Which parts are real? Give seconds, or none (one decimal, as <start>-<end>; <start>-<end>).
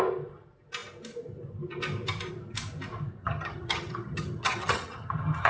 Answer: 0.0-3.2